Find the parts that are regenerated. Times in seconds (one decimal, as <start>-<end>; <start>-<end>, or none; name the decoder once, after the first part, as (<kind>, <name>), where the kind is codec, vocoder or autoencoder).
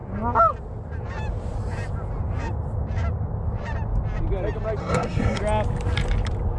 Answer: 4.8-5.4 (codec, SNAC)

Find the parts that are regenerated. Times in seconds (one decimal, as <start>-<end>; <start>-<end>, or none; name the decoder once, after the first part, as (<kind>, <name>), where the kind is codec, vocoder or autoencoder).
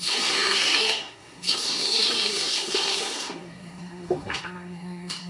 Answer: 0.0-5.3 (codec, SNAC)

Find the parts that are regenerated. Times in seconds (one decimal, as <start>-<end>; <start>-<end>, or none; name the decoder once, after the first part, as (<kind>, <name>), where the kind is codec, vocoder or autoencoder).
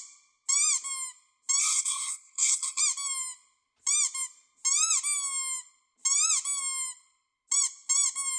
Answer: 1.6-2.8 (codec, SNAC)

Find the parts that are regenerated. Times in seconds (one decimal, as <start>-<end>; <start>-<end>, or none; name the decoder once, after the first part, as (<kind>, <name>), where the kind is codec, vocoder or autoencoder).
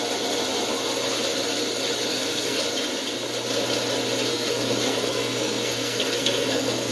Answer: 2.1-2.6 (codec, SNAC); 4.3-6.9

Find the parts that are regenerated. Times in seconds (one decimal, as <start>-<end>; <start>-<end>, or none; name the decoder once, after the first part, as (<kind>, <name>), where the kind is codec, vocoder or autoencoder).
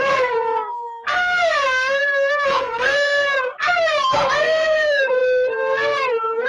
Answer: 0.0-6.5 (codec, SNAC)